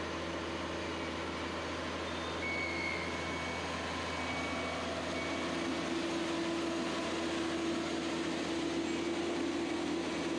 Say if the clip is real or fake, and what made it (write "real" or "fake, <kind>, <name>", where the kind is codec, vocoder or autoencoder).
real